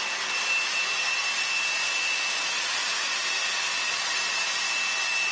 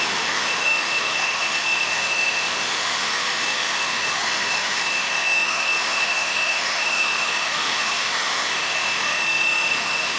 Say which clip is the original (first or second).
first